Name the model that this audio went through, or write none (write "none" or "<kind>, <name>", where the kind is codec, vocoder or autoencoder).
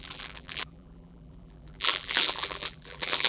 vocoder, BigVGAN v2